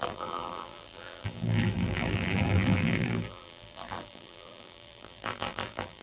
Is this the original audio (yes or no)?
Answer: no